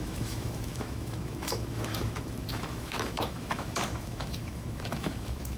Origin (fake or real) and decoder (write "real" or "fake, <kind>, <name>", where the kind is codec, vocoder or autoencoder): fake, autoencoder, DAC-VAE